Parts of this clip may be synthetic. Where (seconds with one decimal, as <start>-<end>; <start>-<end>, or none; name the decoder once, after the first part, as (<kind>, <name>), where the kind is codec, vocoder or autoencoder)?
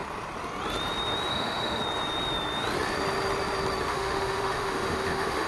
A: 1.3-1.8 (autoencoder, DAC-VAE); 3.9-5.5